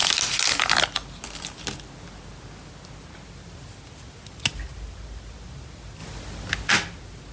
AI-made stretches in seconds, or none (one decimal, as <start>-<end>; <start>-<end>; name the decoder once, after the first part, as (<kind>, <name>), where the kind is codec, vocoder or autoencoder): none

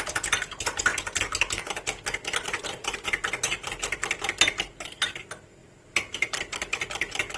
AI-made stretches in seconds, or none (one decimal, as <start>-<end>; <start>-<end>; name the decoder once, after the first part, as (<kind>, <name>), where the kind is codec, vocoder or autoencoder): 5.6-6.4 (vocoder, BigVGAN v2)

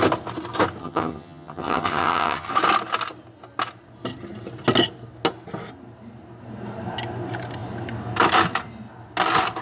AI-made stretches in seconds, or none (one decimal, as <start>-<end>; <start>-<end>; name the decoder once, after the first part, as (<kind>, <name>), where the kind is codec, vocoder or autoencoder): 0.8-2.5 (vocoder, HiFi-GAN)